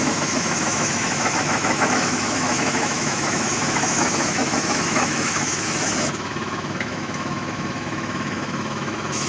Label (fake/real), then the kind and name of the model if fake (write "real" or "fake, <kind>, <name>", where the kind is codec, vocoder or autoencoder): fake, autoencoder, DAC-VAE